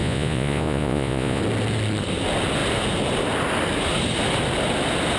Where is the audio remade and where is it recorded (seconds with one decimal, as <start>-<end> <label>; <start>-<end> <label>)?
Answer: 0.0-1.4 remade; 1.4-5.2 recorded